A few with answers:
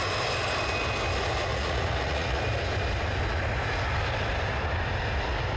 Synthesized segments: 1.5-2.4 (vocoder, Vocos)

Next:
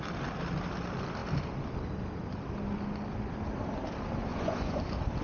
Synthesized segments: 4.3-4.8 (vocoder, Vocos)

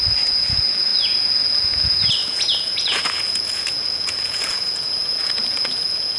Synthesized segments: 0.0-6.2 (vocoder, Vocos)

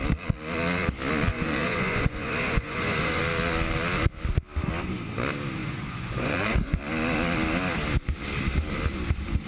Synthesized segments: 1.3-3.2 (vocoder, Vocos); 5.6-6.8

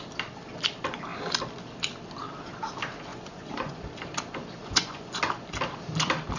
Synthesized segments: 3.1-3.8 (vocoder, Vocos); 4.6-5.2

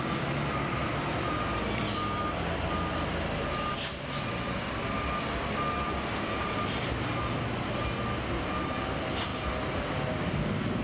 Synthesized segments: none

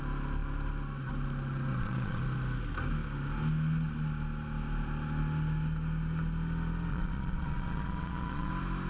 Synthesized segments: 1.7-2.2 (vocoder, Vocos); 6.9-8.5